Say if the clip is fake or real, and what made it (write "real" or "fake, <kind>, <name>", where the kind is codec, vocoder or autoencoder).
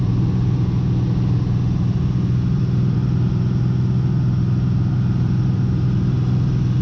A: real